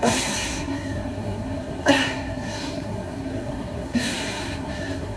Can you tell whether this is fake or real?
fake